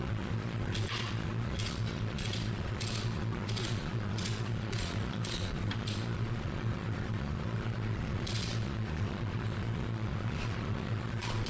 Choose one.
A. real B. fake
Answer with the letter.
B